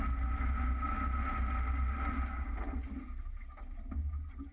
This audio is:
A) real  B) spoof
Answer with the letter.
A